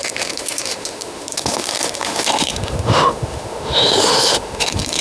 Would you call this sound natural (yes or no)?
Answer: no